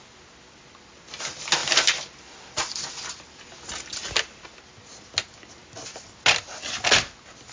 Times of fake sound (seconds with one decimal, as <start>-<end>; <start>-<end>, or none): none